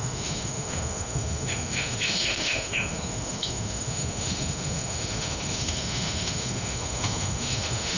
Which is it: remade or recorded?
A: remade